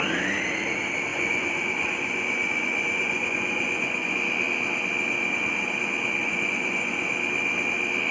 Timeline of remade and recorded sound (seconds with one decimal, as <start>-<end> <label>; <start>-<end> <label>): 0.0-1.1 recorded; 1.1-4.3 remade; 4.3-6.2 recorded; 6.2-7.1 remade; 7.1-8.1 recorded